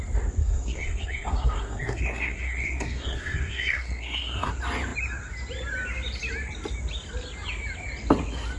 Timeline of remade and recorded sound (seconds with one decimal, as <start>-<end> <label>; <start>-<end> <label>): 0.0-0.4 recorded; 0.4-4.5 remade; 4.5-8.6 recorded